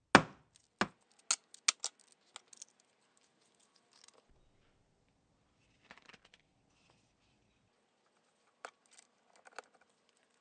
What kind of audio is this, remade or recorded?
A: recorded